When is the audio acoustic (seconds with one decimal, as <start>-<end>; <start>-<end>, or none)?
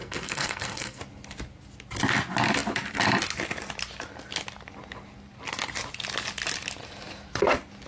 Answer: 1.0-7.9